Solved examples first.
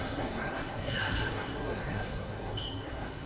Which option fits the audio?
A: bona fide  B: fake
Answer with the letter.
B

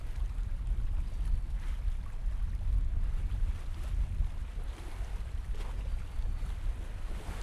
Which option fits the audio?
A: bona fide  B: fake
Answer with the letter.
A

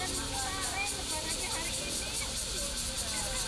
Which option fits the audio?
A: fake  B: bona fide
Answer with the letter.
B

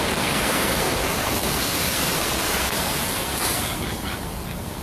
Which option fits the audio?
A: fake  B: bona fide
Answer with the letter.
A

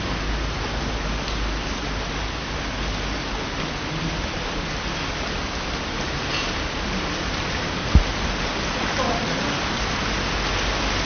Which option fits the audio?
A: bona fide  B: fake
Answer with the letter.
A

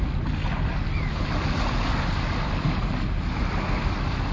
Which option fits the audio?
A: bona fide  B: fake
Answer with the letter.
A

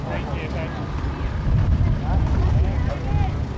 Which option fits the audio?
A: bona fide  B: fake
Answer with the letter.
A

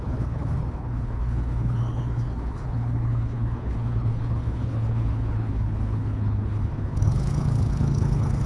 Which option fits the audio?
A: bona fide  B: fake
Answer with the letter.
B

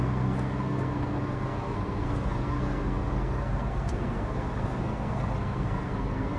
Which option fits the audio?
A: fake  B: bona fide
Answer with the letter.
A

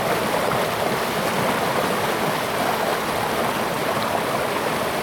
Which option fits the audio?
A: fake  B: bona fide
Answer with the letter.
B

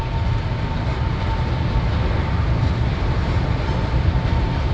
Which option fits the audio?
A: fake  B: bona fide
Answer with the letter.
B